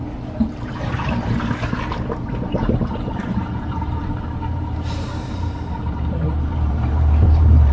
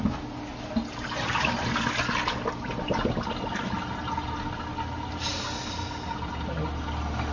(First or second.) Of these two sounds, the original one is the second